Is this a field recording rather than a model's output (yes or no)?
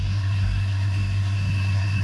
no